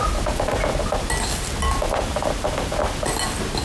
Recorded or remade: recorded